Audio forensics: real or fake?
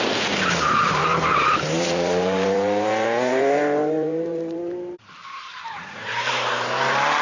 fake